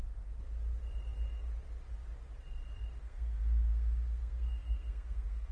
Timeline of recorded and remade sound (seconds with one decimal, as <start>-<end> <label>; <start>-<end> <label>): 0.0-3.0 recorded; 3.0-5.5 remade